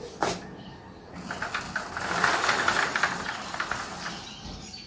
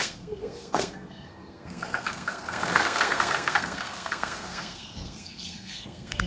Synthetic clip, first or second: second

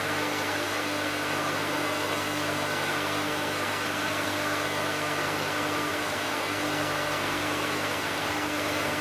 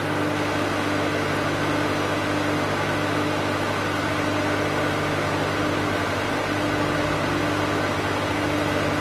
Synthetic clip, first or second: first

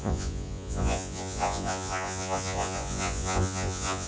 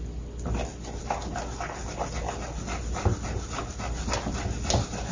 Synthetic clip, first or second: first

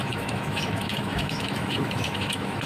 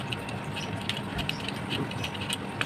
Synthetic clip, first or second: first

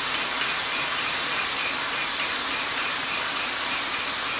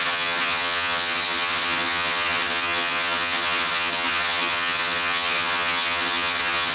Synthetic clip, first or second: second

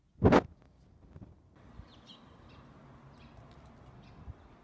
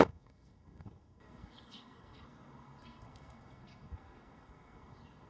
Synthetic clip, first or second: second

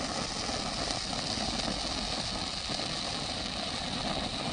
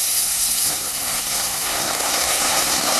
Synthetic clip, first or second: second